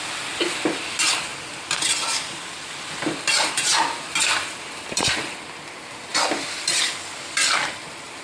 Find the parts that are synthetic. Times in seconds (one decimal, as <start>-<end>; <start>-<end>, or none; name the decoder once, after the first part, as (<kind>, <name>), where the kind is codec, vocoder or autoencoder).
1.3-3.5 (vocoder, BigVGAN v2); 4.3-5.1; 6.1-8.2